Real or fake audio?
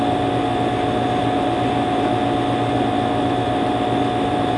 real